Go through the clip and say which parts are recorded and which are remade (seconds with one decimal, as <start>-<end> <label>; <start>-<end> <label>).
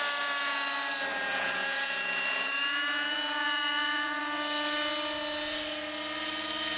0.0-1.1 recorded; 1.1-4.2 remade; 4.2-6.8 recorded